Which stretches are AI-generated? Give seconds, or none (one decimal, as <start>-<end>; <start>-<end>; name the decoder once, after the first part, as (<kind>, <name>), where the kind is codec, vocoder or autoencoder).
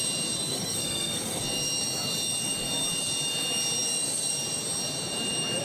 0.5-1.4 (codec, SNAC)